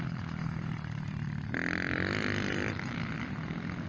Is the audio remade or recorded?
recorded